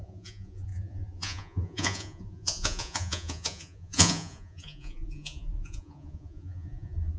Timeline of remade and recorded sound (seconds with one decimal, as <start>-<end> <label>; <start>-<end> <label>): 0.0-7.2 remade